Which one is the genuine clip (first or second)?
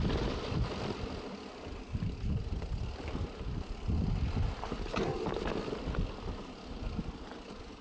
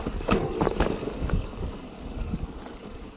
first